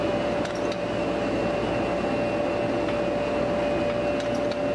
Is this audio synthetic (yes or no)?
no